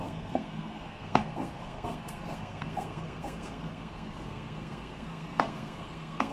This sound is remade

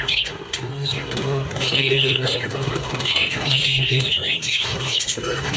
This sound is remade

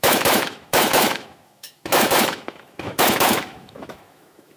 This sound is remade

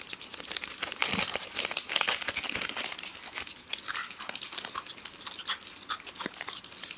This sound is recorded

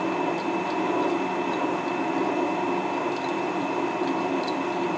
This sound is recorded